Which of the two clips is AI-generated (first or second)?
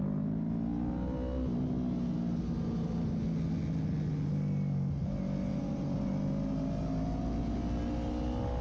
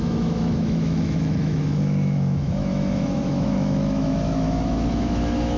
second